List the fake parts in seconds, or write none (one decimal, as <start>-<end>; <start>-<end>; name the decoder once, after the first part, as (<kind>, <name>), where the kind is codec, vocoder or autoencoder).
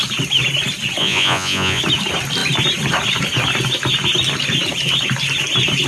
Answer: 1.0-1.8 (vocoder, Vocos)